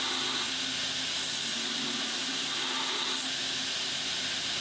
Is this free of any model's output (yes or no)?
yes